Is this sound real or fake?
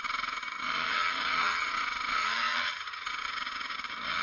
fake